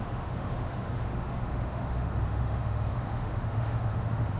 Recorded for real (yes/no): no